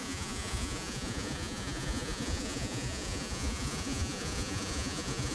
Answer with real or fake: fake